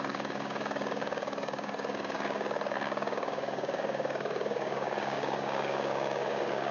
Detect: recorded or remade remade